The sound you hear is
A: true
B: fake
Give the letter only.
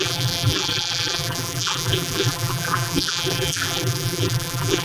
B